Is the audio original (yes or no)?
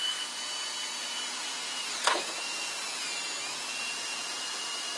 no